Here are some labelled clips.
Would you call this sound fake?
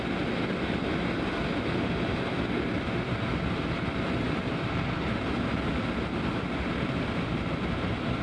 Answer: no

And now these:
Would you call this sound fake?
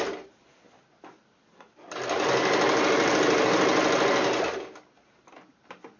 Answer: no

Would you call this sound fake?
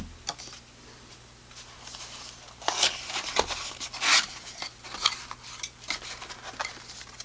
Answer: no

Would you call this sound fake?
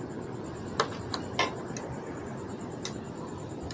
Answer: no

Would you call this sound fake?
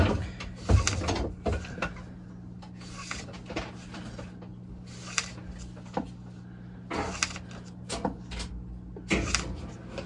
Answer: no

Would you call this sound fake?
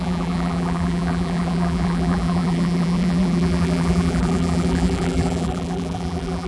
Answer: yes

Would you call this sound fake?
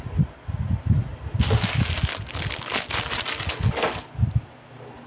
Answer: no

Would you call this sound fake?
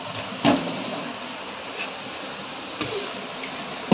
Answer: no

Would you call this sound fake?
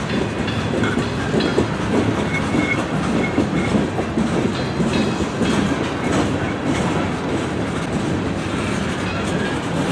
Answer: no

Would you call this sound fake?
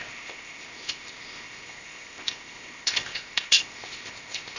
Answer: yes